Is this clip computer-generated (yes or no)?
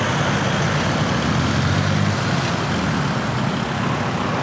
no